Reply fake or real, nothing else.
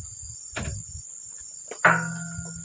real